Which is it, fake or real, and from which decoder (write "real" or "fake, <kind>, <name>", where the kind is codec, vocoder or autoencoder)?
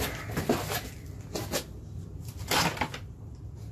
real